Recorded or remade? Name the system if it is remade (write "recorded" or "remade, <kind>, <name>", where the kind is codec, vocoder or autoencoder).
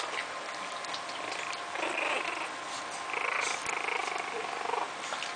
recorded